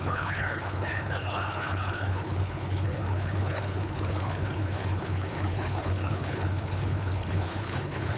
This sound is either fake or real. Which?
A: fake